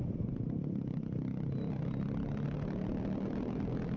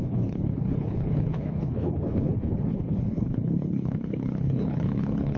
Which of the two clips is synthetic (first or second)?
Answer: second